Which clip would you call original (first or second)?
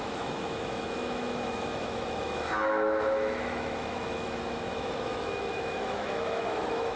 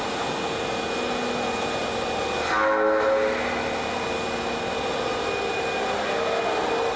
second